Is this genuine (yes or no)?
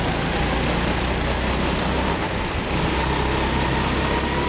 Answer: yes